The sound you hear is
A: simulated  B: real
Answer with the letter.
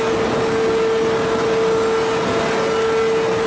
B